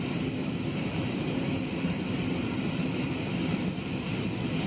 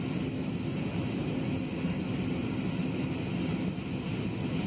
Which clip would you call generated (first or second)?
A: first